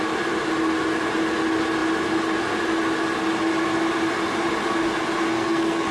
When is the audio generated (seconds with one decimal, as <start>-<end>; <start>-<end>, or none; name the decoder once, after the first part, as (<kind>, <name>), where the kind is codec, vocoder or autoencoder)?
5.3-5.9 (codec, SNAC)